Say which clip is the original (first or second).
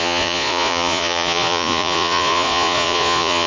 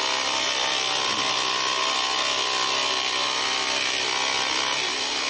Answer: second